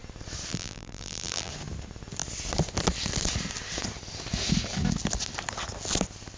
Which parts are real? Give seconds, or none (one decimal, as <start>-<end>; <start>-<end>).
0.0-0.5; 1.5-6.4